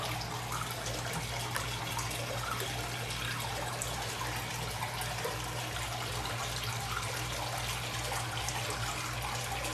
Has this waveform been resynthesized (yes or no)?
no